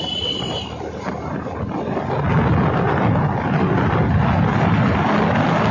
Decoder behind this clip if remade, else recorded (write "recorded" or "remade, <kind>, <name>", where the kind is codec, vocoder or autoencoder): recorded